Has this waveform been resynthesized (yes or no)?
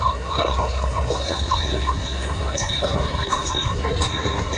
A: yes